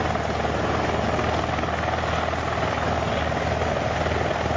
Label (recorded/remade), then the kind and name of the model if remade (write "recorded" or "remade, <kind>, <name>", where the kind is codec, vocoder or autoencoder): recorded